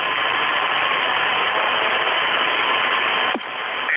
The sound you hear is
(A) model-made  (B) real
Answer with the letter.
B